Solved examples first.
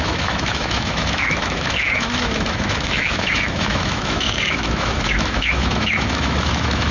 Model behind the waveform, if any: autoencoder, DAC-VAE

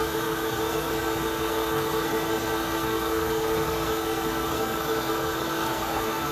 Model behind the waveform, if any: codec, SNAC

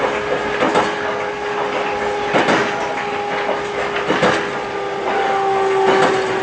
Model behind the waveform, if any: none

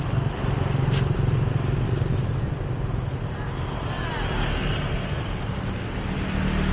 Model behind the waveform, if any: none